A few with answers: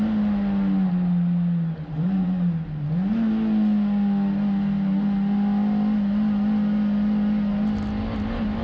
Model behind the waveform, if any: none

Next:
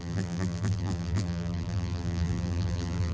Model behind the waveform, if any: vocoder, BigVGAN v2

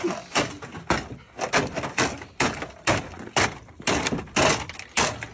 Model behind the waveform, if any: none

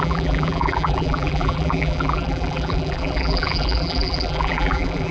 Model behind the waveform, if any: vocoder, BigVGAN v2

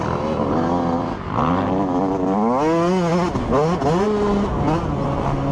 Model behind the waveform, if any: none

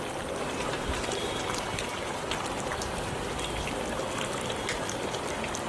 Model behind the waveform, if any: none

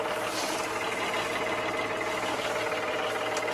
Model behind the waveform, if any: none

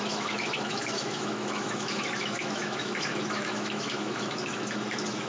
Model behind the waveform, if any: autoencoder, DAC-VAE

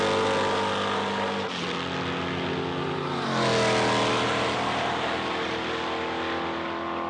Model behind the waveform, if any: none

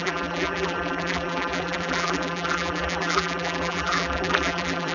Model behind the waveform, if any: vocoder, BigVGAN v2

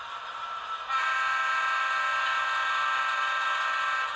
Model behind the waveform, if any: none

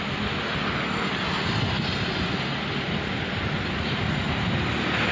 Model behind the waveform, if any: none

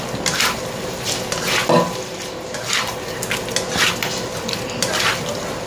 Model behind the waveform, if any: none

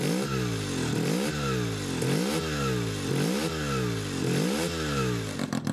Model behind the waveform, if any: none